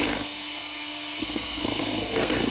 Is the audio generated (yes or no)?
yes